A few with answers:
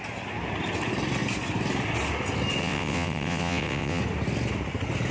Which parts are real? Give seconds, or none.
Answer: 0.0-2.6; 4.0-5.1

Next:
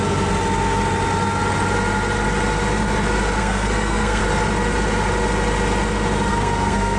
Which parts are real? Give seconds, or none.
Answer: 0.0-3.4; 4.2-6.3

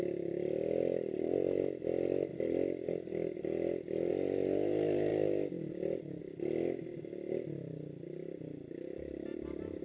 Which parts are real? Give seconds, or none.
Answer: 0.0-9.8

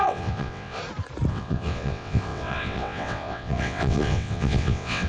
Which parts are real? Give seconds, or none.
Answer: 0.8-1.3

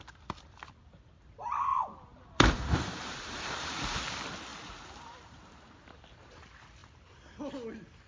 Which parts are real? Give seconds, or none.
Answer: 0.0-1.7; 4.1-4.5; 5.6-8.1